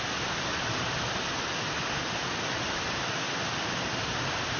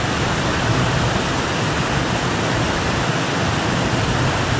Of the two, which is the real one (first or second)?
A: second